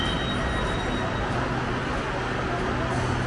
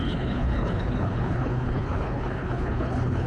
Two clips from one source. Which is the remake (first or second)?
second